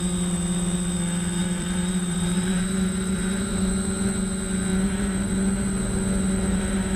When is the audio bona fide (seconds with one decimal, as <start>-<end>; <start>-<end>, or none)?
0.0-1.4; 3.7-4.7; 5.3-6.5